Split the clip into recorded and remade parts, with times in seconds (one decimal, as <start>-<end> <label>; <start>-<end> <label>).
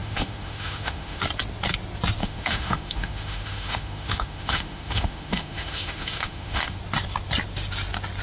0.0-1.2 remade; 1.2-2.2 recorded; 2.2-6.8 remade; 6.8-8.2 recorded